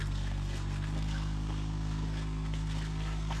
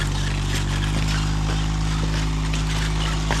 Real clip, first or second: second